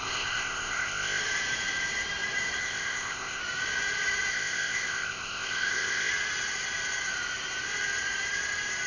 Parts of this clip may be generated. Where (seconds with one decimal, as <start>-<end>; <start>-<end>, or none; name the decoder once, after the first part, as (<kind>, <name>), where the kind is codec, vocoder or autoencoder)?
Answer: 0.0-1.2 (codec, ZipCodec); 2.6-3.4; 4.3-6.1